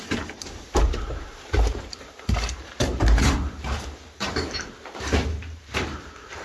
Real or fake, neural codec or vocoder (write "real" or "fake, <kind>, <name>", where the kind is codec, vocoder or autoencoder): fake, vocoder, BigVGAN v2